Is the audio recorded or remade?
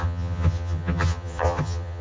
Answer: remade